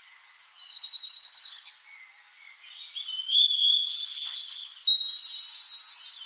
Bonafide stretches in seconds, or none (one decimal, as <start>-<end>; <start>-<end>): 0.0-0.7; 1.7-3.3; 4.7-6.3